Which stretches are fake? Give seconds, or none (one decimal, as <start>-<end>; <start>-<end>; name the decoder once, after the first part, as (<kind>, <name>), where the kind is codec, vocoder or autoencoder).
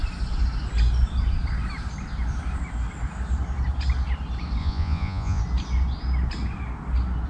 4.6-5.4 (vocoder, Vocos)